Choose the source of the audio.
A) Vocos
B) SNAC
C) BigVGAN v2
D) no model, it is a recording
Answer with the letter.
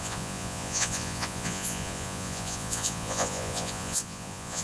A